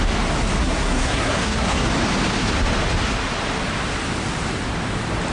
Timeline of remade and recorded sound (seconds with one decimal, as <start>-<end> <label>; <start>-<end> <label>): 0.0-0.6 recorded; 0.6-1.9 remade; 1.9-5.3 recorded